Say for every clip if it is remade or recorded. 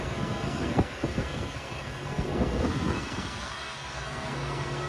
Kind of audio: remade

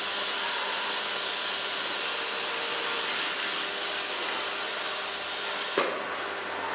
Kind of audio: recorded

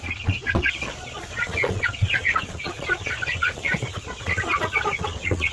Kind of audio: remade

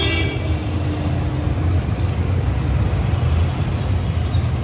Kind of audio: recorded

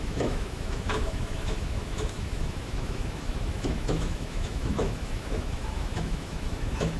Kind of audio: remade